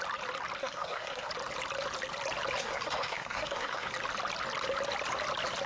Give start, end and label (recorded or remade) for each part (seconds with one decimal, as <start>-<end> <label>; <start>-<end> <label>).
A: 0.0-0.6 recorded; 0.6-1.3 remade; 1.3-2.6 recorded; 2.6-3.9 remade; 3.9-5.7 recorded